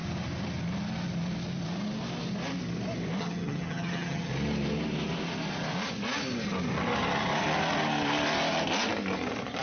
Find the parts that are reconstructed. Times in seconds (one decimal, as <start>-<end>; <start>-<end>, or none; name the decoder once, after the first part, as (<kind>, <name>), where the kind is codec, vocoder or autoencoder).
3.2-4.3 (vocoder, HiFi-GAN)